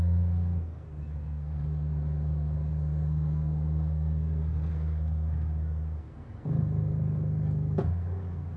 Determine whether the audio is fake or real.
fake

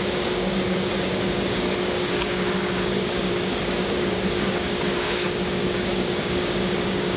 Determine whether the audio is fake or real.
fake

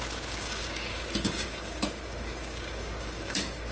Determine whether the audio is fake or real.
fake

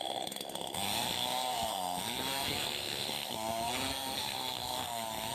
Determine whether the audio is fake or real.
fake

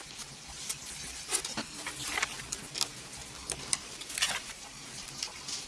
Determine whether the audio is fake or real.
real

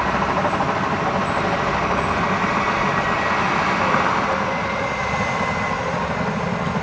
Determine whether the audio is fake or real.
real